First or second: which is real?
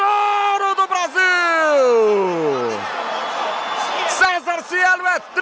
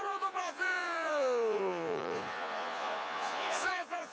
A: first